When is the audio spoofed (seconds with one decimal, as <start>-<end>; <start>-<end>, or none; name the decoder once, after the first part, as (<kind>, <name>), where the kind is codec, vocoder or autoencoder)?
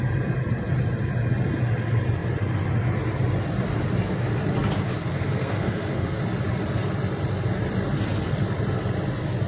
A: 5.1-6.2 (codec, SNAC)